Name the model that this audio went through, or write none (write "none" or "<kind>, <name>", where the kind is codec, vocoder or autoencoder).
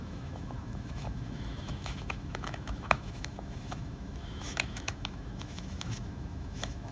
autoencoder, DAC-VAE